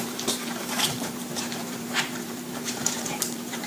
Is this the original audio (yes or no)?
no